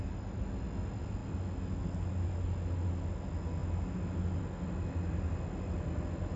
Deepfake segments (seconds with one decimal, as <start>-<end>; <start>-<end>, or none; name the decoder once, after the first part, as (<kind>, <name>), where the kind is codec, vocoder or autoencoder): none